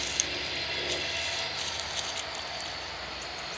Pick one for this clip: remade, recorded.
recorded